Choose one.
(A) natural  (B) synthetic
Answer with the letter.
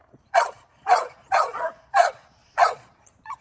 B